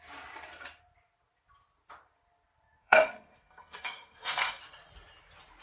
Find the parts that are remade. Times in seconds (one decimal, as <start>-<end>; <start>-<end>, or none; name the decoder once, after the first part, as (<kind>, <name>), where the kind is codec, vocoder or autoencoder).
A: 2.8-4.6 (codec, SNAC)